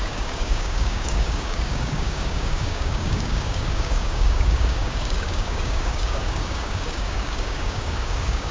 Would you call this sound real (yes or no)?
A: no